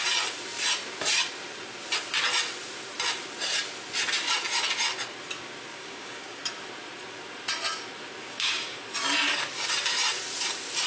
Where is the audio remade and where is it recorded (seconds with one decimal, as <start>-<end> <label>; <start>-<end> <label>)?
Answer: 0.0-5.7 recorded; 5.7-6.4 remade; 6.4-8.2 recorded; 8.2-8.8 remade; 8.8-10.9 recorded